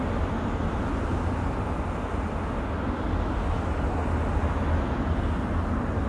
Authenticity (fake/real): real